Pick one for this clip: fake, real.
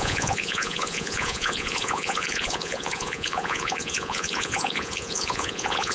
fake